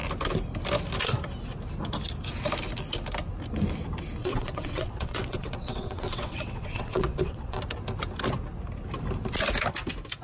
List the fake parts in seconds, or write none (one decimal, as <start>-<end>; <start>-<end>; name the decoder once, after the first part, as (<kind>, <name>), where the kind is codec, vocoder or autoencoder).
4.2-7.6 (vocoder, WaveNeXt)